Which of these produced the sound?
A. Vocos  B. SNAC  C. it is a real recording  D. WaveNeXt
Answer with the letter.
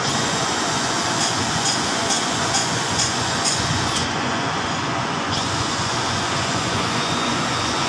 A